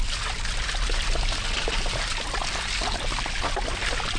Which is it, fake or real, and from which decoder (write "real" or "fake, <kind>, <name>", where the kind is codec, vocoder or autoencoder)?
real